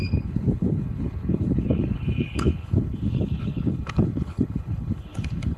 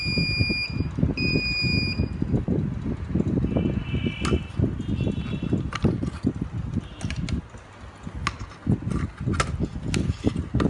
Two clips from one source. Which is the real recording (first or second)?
second